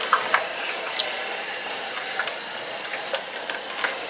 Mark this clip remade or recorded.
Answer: recorded